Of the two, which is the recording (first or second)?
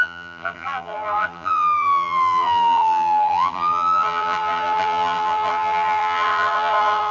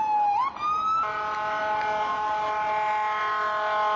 second